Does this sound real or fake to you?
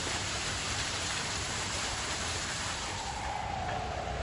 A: fake